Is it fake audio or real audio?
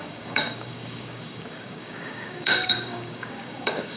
fake